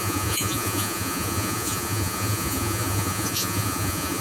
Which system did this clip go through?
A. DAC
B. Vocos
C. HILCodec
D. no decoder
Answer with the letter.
B